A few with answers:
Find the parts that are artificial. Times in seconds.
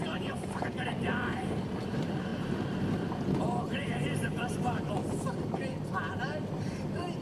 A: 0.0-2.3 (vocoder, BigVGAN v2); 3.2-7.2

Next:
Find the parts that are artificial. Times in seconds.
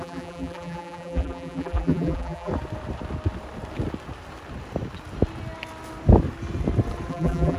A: 0.0-2.5 (vocoder, BigVGAN v2); 7.1-7.6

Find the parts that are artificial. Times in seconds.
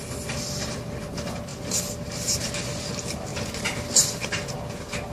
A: 1.5-2.4 (vocoder, BigVGAN v2)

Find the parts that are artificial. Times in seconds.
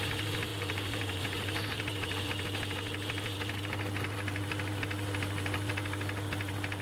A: 0.5-2.3 (vocoder, BigVGAN v2)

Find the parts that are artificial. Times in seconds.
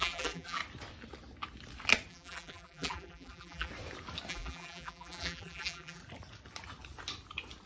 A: 0.0-0.6 (vocoder, BigVGAN v2); 2.1-3.7; 4.3-6.0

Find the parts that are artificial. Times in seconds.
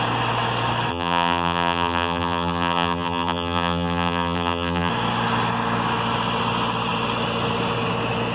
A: 0.9-4.9 (vocoder, BigVGAN v2)